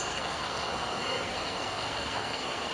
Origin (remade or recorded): remade